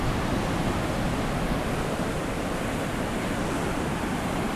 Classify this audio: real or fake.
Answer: real